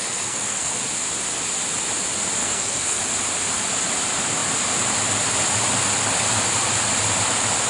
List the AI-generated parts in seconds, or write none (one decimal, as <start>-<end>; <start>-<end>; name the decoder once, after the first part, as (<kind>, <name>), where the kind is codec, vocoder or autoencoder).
0.0-0.8 (codec, SNAC); 2.4-3.0